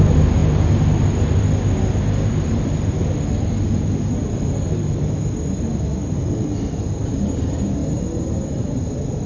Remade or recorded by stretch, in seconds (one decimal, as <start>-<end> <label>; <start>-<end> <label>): 0.0-9.3 recorded